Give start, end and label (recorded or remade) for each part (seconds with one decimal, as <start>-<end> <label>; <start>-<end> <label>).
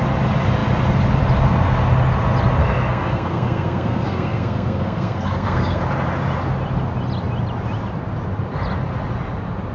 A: 0.0-2.6 recorded; 2.6-5.8 remade; 5.8-9.7 recorded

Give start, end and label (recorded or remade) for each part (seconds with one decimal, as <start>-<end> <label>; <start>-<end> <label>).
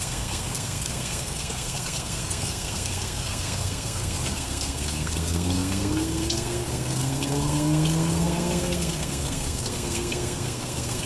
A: 0.0-11.1 remade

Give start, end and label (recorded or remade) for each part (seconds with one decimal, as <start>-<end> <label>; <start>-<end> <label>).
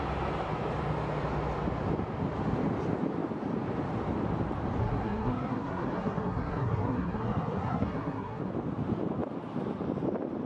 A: 0.0-4.8 recorded; 4.8-8.5 remade; 8.5-10.5 recorded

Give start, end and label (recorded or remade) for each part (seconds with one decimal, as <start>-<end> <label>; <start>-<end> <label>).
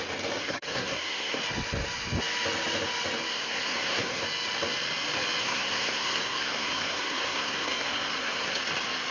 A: 0.0-0.4 recorded; 0.4-1.4 remade; 1.4-3.3 recorded; 3.3-4.2 remade; 4.2-5.4 recorded; 5.4-8.6 remade; 8.6-9.1 recorded